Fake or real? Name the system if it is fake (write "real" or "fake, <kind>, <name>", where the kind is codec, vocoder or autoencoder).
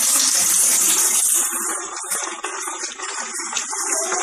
fake, vocoder, BigVGAN v2